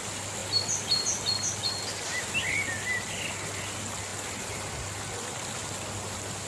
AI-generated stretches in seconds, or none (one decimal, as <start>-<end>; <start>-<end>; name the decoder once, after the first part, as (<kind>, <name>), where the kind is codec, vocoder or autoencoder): none